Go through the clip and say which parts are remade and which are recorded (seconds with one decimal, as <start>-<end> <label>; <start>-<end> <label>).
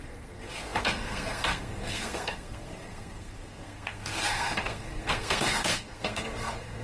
0.0-6.8 remade